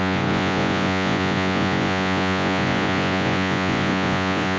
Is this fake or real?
fake